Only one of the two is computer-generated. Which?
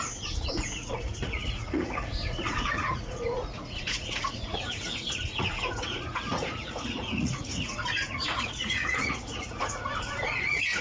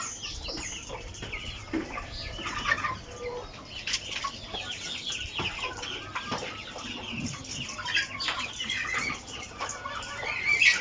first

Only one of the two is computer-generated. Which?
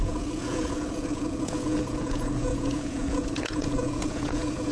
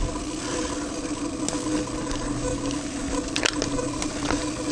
first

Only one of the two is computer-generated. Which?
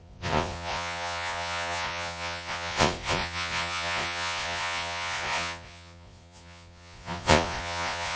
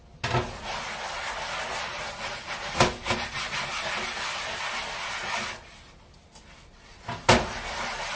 first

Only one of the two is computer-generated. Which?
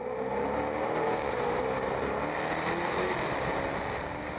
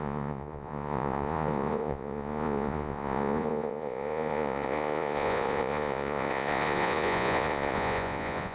second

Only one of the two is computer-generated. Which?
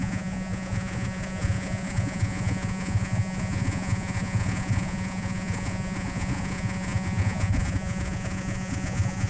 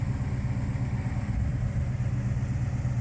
first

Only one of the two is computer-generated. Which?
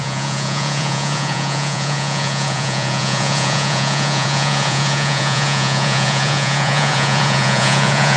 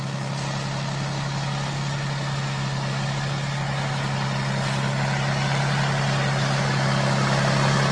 first